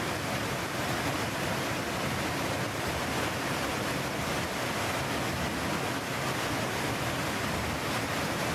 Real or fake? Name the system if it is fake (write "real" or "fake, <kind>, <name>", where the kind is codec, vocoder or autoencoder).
real